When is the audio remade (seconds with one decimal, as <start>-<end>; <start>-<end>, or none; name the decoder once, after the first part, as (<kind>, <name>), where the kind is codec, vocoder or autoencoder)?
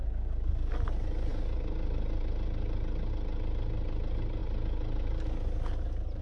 none